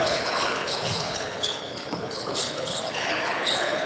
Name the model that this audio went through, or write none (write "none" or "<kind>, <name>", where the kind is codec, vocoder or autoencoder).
codec, HILCodec